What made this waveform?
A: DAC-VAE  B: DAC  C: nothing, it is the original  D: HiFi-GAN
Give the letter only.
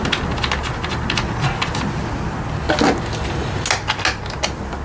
C